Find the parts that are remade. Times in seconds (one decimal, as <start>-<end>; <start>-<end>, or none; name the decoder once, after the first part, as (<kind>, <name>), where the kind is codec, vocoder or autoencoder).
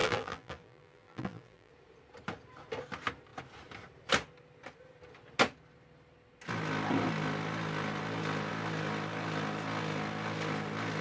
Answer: 0.0-1.7 (vocoder, BigVGAN v2)